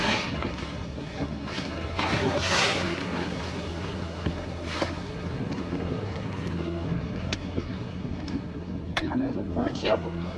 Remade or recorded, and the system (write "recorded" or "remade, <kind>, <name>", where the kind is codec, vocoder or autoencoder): remade, codec, SNAC